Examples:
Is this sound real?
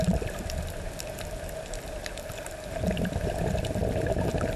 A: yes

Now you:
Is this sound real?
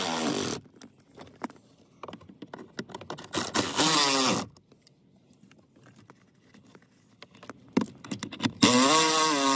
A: yes